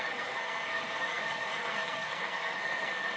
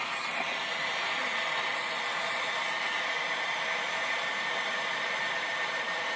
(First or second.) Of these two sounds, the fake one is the first